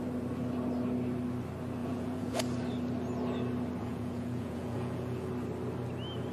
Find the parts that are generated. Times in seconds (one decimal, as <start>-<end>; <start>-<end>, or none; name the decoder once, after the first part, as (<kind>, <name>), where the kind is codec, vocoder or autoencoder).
1.8-2.4 (vocoder, Vocos); 3.8-5.3